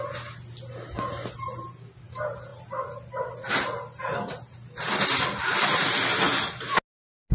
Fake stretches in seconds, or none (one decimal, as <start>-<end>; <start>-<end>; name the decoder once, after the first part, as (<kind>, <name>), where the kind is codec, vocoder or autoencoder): none